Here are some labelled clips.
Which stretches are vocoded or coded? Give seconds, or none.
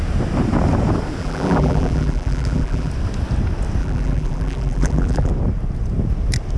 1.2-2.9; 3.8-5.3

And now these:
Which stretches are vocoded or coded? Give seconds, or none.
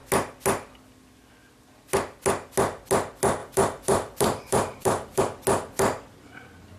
3.4-5.2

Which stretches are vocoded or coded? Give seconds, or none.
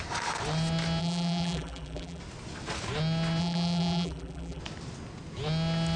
1.0-2.2; 3.4-4.6